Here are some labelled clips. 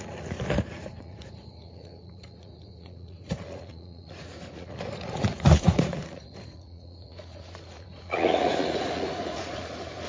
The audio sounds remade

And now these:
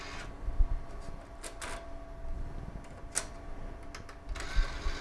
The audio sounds recorded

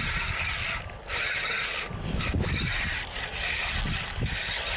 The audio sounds recorded